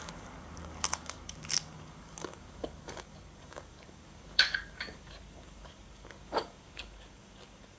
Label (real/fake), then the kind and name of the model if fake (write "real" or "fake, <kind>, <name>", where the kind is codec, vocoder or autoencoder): fake, codec, DAC